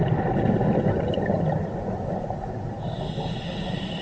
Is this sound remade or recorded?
recorded